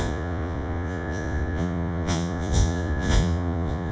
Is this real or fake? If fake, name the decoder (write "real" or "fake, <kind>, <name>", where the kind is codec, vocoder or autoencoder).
fake, vocoder, Vocos